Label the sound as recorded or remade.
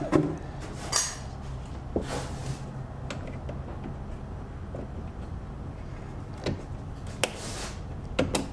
recorded